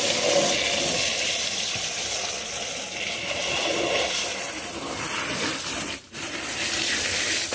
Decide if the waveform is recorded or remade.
recorded